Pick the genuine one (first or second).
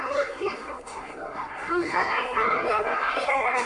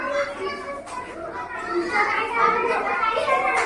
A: second